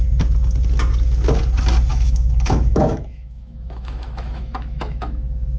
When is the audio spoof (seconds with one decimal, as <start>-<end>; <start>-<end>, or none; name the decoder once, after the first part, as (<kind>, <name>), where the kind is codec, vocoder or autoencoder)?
1.9-5.6 (autoencoder, DAC-VAE)